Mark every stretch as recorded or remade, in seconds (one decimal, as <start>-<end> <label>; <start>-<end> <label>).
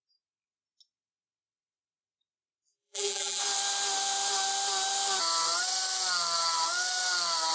0.0-2.7 recorded; 2.7-3.4 remade; 3.4-7.5 recorded